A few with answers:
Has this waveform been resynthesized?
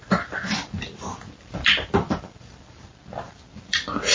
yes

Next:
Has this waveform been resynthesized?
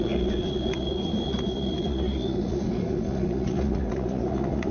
yes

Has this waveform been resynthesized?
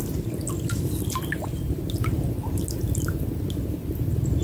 no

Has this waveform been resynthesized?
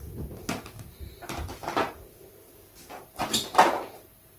no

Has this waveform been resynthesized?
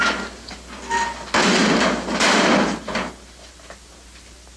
no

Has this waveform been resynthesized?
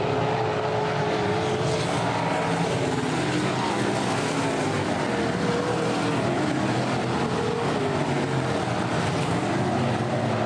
no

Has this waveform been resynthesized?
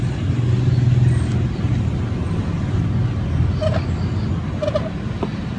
no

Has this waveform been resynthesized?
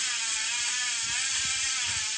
no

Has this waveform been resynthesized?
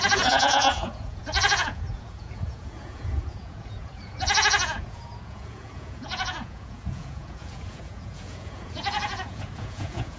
yes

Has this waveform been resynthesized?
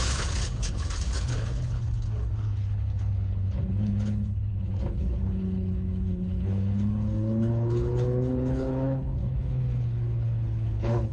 yes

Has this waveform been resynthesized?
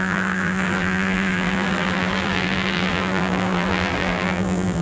yes